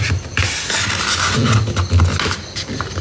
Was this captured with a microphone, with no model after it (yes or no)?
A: yes